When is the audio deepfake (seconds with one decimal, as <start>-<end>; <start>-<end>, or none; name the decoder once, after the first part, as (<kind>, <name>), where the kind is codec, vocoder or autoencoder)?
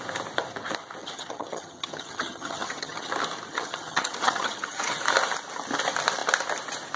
1.0-3.1 (vocoder, HiFi-GAN); 3.5-5.0